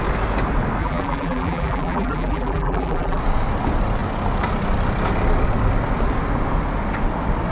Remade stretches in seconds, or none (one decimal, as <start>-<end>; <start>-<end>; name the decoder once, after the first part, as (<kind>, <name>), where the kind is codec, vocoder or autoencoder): 0.8-3.2 (vocoder, BigVGAN v2)